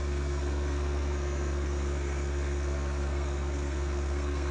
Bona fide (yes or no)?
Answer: no